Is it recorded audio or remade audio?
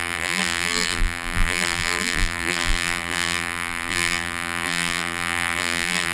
remade